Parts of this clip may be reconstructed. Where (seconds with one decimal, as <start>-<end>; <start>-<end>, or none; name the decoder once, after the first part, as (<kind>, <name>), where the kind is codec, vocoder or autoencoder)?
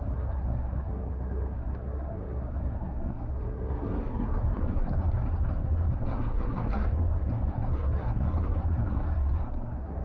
0.0-10.0 (codec, SNAC)